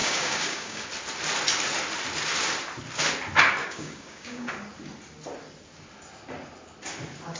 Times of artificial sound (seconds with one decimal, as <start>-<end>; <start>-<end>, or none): 0.0-0.8; 3.6-4.5